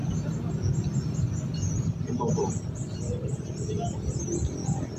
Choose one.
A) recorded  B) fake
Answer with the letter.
A